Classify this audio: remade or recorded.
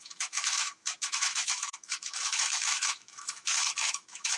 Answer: remade